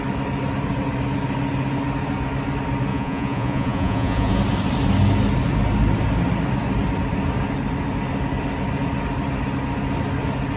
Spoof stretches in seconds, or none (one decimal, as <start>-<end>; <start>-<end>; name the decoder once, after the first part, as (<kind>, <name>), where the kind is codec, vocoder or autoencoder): 2.9-4.4 (vocoder, Vocos)